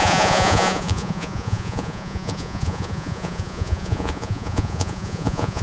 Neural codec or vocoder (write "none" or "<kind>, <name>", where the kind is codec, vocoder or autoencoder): vocoder, Vocos